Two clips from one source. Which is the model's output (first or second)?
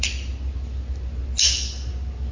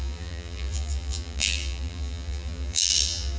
second